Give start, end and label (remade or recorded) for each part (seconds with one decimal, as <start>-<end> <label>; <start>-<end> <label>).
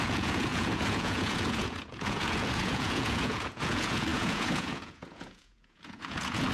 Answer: 0.0-6.5 remade